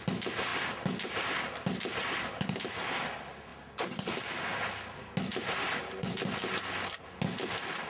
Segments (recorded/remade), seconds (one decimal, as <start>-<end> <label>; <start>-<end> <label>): 0.0-5.3 recorded; 5.3-6.6 remade; 6.6-7.9 recorded